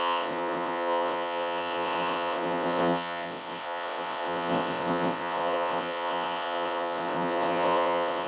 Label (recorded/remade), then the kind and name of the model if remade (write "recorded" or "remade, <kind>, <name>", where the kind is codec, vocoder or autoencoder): remade, vocoder, WaveNeXt